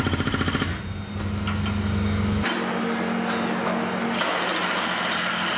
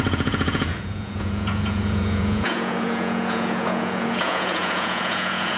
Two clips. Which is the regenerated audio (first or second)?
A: second